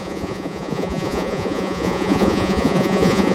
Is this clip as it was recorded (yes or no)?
no